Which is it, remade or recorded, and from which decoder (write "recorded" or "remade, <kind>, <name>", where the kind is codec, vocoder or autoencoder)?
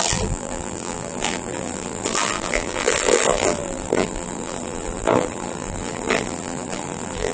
remade, vocoder, BigVGAN v2